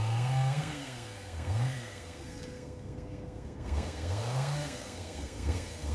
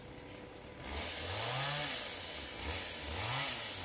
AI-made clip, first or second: first